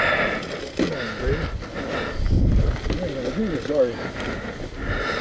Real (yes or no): yes